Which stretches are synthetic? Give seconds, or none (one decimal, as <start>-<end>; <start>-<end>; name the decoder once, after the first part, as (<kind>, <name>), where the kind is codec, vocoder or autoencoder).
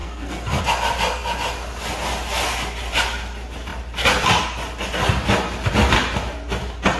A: 0.0-0.6 (codec, SNAC)